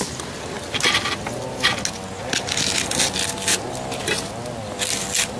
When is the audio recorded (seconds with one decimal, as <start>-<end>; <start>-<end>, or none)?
0.0-5.4